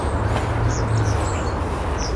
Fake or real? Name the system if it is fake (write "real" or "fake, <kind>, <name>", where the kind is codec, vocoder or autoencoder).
real